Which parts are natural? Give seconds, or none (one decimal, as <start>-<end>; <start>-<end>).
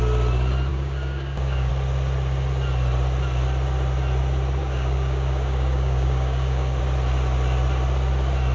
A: 0.0-0.7; 1.7-4.6; 6.8-8.5